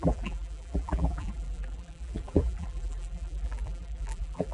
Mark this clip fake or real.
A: fake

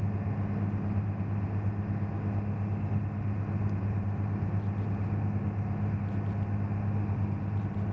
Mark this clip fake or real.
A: real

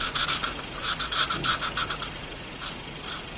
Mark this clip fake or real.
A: fake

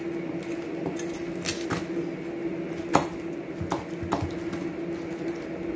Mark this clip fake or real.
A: real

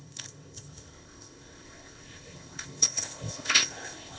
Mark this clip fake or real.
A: fake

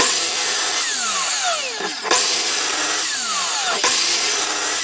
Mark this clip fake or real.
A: real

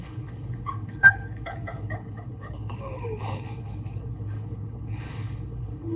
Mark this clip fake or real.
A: fake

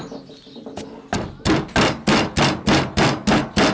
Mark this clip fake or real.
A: real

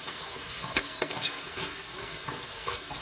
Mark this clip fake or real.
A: fake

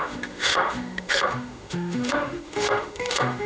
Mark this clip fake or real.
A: fake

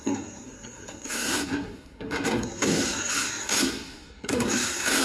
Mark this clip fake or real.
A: fake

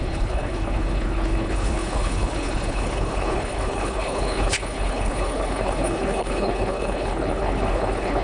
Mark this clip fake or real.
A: fake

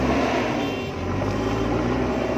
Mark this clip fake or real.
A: real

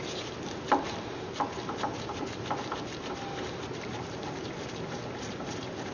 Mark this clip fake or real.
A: real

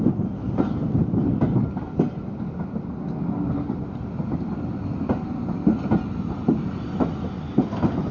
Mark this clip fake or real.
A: real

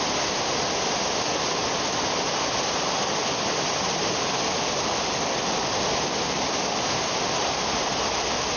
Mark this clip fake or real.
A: real